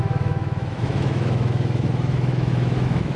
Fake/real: fake